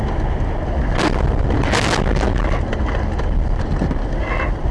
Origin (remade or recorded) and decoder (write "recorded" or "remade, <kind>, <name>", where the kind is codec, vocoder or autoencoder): recorded